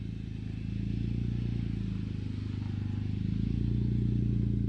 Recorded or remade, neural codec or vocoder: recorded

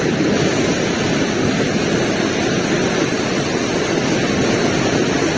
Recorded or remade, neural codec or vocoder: recorded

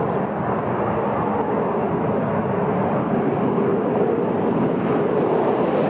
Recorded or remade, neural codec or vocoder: recorded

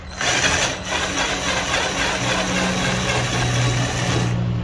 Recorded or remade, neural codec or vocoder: recorded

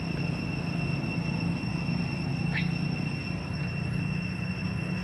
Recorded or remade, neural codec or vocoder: recorded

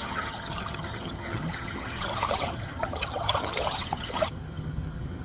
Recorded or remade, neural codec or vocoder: remade, vocoder, HiFi-GAN